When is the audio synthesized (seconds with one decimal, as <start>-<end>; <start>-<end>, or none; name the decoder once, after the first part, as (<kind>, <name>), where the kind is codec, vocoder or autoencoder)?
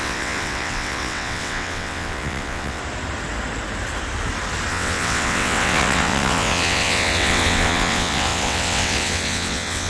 0.0-2.8 (vocoder, WaveNeXt); 4.7-9.9